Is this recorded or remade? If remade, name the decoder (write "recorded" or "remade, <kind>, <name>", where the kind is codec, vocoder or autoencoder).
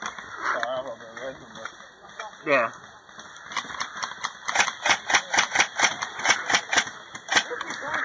recorded